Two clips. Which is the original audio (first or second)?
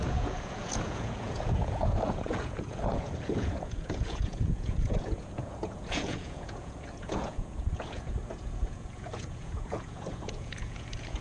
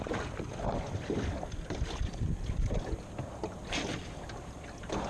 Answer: second